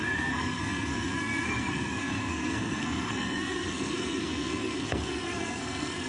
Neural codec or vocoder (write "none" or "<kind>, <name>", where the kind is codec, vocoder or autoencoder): codec, SNAC